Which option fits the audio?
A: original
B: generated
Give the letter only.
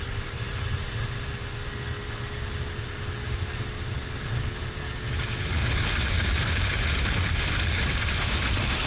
A